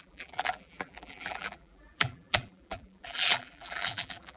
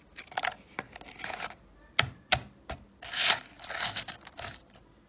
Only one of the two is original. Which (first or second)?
second